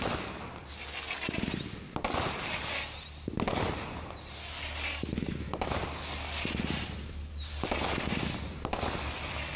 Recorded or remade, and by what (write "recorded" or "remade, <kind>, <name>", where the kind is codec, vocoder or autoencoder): recorded